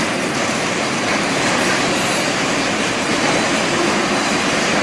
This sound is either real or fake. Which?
fake